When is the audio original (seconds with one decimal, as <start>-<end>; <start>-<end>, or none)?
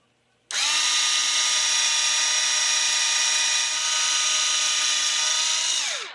0.0-6.1